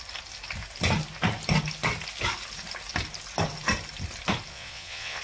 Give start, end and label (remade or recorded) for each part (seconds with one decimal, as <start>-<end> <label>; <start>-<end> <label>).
0.0-4.5 recorded; 4.5-5.2 remade